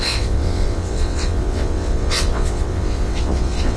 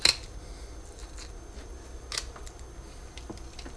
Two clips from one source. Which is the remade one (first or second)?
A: first